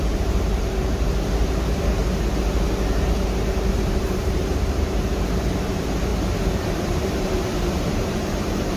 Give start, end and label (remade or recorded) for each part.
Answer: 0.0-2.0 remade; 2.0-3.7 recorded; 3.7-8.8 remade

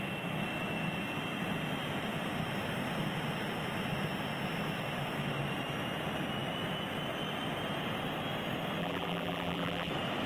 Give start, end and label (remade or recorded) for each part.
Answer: 0.0-8.8 recorded; 8.8-9.9 remade; 9.9-10.3 recorded

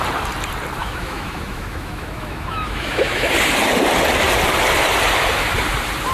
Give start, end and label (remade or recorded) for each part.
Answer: 0.0-0.8 recorded; 0.8-3.3 remade; 3.3-6.1 recorded

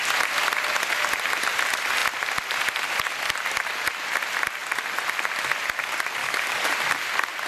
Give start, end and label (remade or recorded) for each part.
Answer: 0.0-6.2 recorded; 6.2-6.7 remade; 6.7-7.5 recorded